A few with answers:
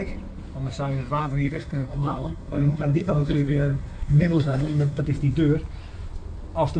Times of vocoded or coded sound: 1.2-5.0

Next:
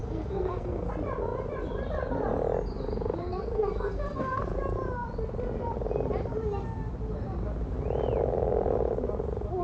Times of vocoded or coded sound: 0.0-0.9; 3.2-4.4

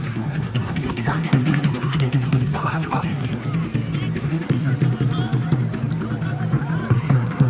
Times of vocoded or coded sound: 0.0-3.4; 4.2-4.7; 6.9-7.5

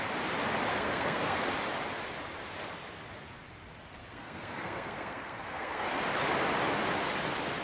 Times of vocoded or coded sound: 0.7-1.4; 4.0-6.0

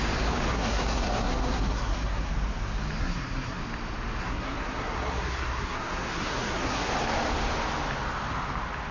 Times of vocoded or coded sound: 0.5-2.3; 3.0-3.6; 4.2-6.9

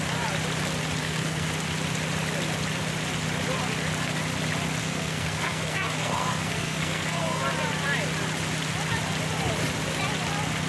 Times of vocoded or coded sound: 1.0-1.5; 4.8-7.4

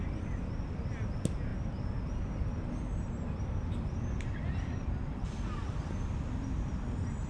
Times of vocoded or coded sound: none